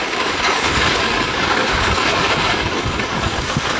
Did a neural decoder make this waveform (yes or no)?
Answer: yes